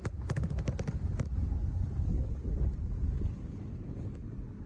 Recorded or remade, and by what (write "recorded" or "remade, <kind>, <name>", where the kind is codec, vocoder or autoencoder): recorded